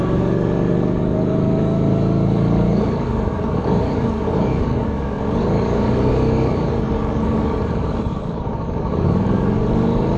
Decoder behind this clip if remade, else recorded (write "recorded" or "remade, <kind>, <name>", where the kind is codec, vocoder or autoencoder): remade, codec, DAC